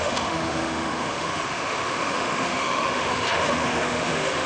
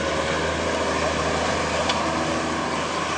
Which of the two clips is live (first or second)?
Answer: second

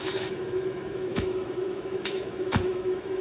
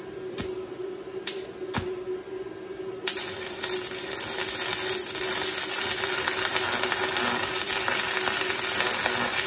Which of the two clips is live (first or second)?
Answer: second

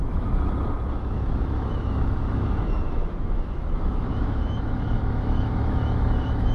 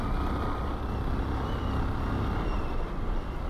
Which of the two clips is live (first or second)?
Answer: second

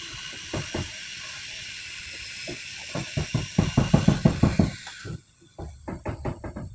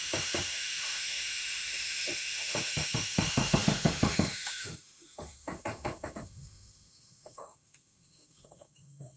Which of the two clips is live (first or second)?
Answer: first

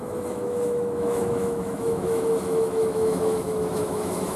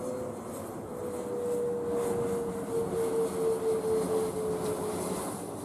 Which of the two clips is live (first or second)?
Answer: second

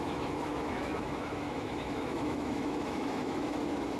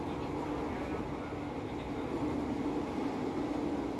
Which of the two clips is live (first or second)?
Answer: second